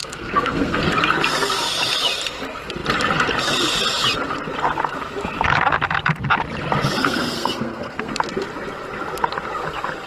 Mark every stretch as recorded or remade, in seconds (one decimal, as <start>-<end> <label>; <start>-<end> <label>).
0.0-0.8 remade; 0.8-7.0 recorded; 7.0-8.1 remade; 8.1-10.1 recorded